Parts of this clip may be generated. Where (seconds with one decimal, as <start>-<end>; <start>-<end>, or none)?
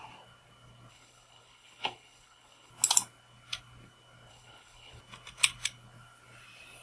0.9-2.7; 4.3-5.0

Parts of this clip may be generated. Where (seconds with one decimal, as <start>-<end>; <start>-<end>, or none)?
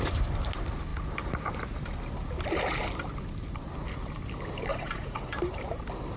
4.7-5.4